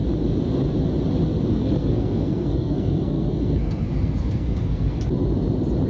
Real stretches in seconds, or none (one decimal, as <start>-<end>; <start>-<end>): 0.0-1.5; 5.0-5.9